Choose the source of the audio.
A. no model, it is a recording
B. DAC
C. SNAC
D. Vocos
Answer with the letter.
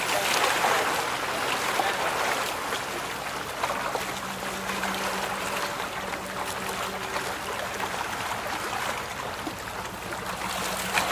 A